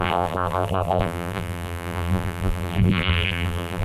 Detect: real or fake fake